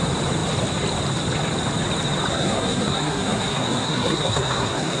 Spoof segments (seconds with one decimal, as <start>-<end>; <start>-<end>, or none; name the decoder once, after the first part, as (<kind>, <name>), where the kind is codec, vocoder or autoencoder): 2.3-5.0 (codec, SNAC)